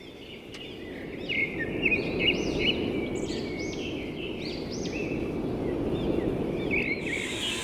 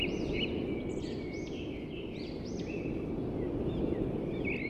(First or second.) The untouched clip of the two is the first